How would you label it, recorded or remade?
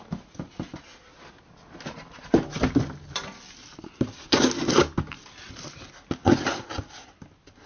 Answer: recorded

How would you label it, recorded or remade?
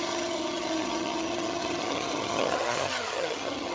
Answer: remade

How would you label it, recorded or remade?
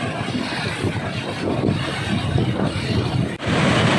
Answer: recorded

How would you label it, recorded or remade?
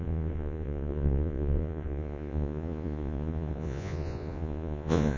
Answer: remade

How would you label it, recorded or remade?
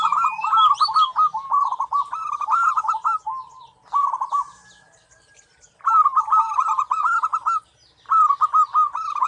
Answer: recorded